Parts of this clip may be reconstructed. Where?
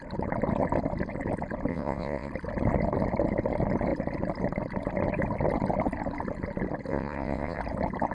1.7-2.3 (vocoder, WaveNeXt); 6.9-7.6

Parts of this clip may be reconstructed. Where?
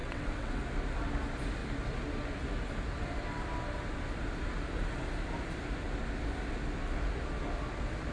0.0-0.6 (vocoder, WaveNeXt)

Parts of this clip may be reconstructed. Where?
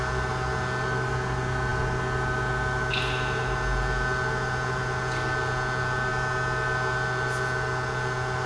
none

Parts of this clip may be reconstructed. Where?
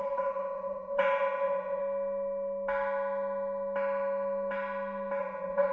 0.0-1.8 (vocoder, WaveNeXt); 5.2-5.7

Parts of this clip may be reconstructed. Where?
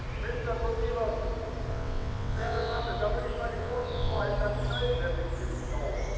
1.7-2.8 (vocoder, WaveNeXt); 3.6-4.2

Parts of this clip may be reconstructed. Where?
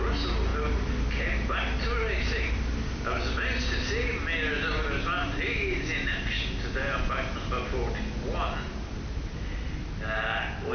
none